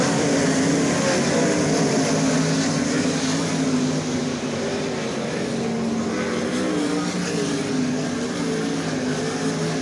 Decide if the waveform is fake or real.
real